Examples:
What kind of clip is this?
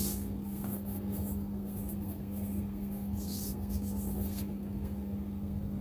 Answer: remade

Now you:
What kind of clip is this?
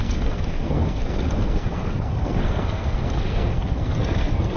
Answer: remade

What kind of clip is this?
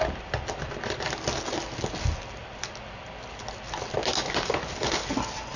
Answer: recorded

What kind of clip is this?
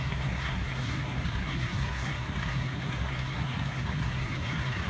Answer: remade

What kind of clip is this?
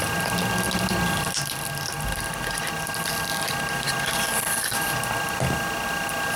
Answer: recorded